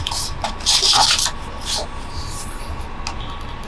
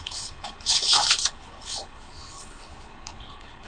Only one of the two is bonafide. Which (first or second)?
first